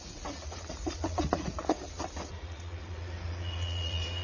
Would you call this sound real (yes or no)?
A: no